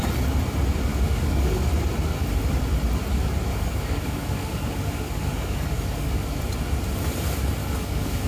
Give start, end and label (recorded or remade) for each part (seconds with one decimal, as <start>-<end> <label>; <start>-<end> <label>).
0.0-0.9 recorded; 0.9-1.7 remade; 1.7-3.5 recorded; 3.5-6.4 remade; 6.4-7.6 recorded; 7.6-8.3 remade